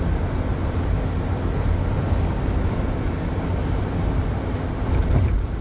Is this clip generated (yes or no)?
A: yes